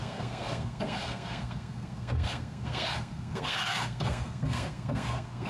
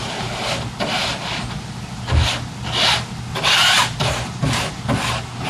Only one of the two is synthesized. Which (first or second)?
first